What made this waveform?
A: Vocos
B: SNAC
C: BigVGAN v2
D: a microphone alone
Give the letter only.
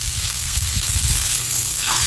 B